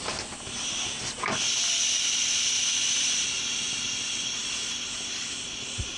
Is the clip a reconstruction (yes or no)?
no